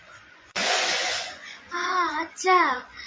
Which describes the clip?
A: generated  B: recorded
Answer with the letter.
A